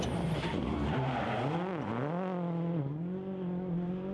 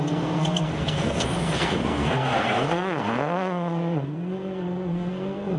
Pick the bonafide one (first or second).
first